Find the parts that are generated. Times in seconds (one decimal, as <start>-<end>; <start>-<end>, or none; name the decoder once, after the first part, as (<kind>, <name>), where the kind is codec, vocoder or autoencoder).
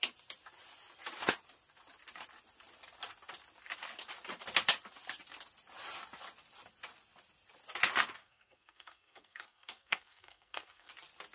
8.2-10.9 (codec, SNAC)